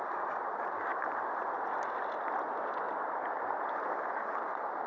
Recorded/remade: recorded